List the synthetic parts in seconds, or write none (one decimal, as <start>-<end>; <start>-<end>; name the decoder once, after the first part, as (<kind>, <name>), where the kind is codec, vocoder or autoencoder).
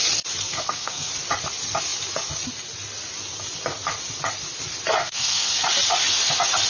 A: 0.4-1.1 (codec, SNAC); 5.0-5.6